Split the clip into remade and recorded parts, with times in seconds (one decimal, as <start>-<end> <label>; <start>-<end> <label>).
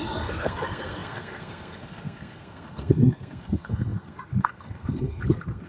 0.0-5.7 remade